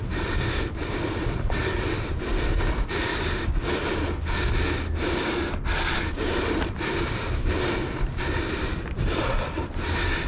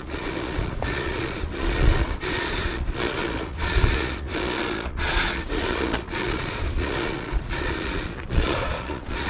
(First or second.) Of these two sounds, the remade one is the second